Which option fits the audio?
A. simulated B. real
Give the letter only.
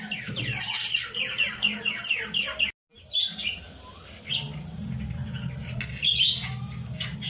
B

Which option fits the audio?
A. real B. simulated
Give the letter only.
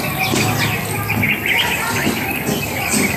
A